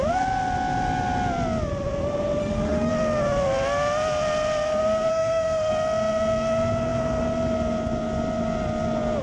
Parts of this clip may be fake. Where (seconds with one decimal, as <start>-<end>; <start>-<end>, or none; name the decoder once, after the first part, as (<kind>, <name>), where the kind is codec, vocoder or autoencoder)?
2.4-2.9 (autoencoder, DAC-VAE); 5.1-5.7